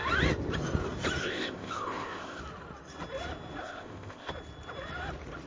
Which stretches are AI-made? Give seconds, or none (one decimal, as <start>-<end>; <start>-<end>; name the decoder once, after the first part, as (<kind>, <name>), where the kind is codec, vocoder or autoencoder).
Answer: 1.2-2.4 (codec, ZipCodec); 3.6-4.3